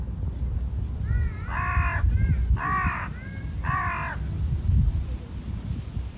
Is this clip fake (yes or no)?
no